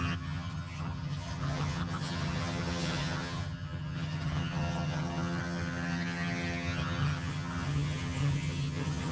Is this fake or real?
fake